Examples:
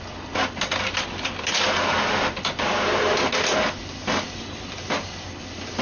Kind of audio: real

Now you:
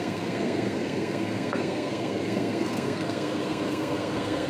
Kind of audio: fake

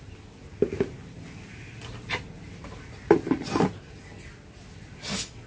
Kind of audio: real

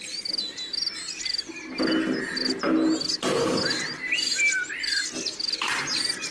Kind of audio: real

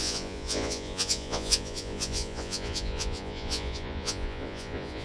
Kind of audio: fake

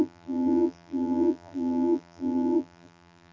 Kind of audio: fake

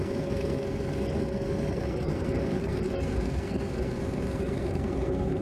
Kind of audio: fake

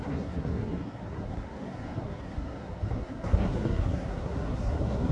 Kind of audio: fake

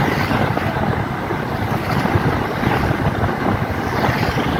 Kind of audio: real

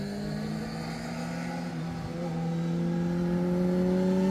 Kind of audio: real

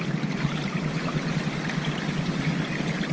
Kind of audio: real